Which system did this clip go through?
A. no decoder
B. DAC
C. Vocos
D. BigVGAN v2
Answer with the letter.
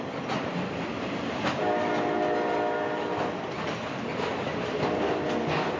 A